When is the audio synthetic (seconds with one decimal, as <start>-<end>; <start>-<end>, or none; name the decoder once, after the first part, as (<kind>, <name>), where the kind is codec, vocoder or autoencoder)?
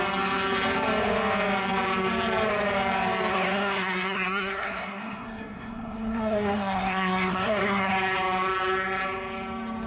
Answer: 3.3-7.9 (codec, SNAC)